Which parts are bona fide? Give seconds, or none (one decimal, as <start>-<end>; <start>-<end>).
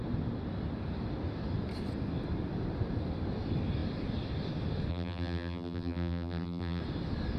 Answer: 0.0-4.9; 6.8-7.4